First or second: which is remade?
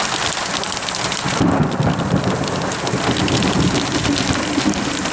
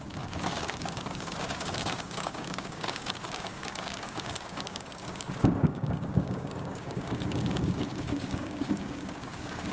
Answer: second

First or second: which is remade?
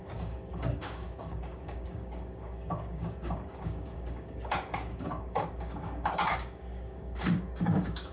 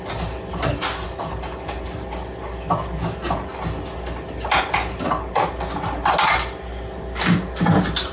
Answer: first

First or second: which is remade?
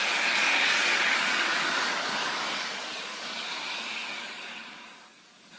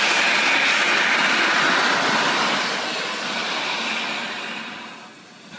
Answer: first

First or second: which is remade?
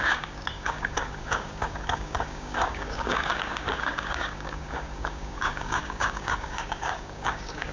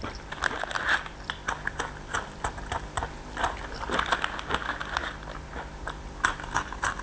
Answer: first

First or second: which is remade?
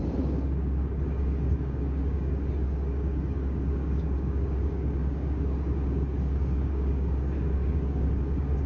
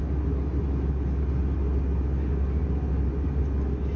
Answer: first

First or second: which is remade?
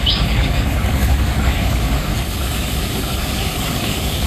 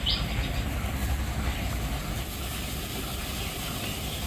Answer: first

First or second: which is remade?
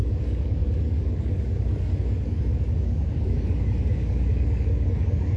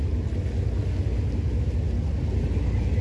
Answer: first